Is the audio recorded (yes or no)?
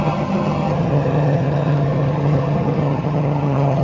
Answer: no